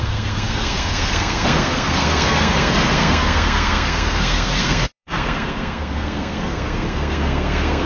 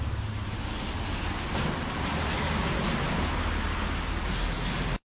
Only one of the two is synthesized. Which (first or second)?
first